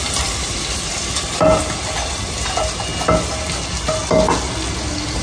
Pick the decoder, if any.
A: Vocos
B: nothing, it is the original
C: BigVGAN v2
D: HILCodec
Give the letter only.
B